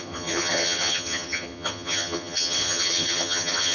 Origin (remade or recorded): remade